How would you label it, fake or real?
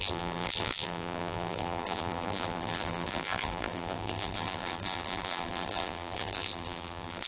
fake